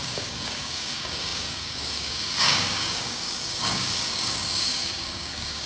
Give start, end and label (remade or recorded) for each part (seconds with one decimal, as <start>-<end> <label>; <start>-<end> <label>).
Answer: 0.0-5.7 remade